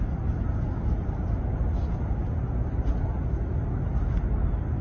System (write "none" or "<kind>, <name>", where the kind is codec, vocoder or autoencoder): none